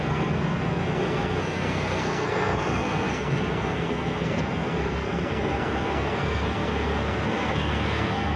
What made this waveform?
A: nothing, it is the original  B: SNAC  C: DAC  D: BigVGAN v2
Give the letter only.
B